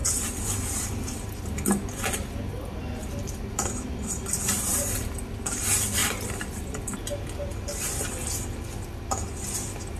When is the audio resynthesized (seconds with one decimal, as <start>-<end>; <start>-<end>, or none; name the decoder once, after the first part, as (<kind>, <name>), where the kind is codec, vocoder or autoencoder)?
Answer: 3.0-5.6 (vocoder, BigVGAN v2); 6.0-7.0